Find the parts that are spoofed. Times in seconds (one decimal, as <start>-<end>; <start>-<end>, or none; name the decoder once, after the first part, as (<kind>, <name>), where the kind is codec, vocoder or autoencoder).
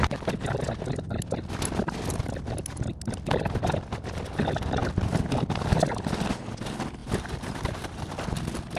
7.0-8.1 (vocoder, BigVGAN v2)